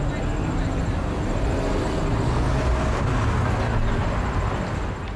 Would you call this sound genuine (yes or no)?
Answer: yes